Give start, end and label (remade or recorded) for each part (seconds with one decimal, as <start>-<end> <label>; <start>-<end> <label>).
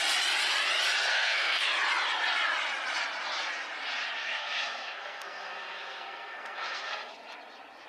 0.0-1.1 recorded; 1.1-1.7 remade; 1.7-4.2 recorded; 4.2-7.1 remade; 7.1-7.9 recorded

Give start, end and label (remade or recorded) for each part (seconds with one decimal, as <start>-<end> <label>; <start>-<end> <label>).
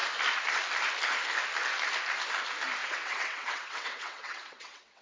0.0-2.8 recorded; 2.8-5.0 remade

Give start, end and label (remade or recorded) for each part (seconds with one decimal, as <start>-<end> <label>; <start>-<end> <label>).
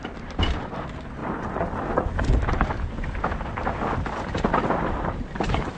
0.0-1.2 remade; 1.2-4.4 recorded; 4.4-5.8 remade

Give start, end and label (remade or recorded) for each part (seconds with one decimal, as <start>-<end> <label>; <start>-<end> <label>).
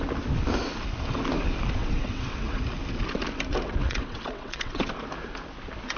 0.0-1.8 recorded; 1.8-2.6 remade; 2.6-3.5 recorded; 3.5-4.9 remade; 4.9-6.0 recorded